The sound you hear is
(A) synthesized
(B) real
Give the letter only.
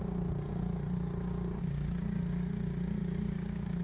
A